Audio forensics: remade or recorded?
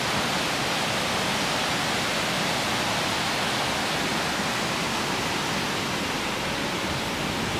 recorded